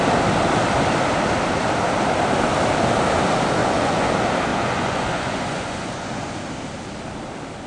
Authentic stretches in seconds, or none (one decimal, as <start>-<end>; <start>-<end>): 0.0-3.6; 4.1-4.5; 6.3-7.7